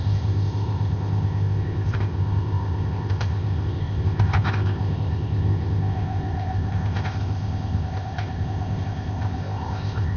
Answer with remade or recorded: remade